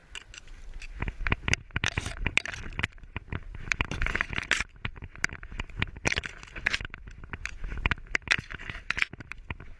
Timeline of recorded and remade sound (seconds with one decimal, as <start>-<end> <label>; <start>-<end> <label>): 0.0-9.8 recorded